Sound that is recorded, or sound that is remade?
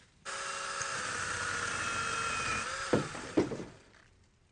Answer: recorded